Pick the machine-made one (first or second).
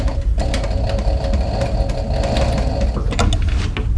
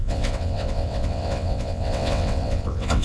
second